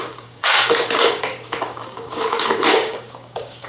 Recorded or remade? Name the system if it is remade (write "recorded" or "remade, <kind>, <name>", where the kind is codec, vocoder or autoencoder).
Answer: remade, codec, DAC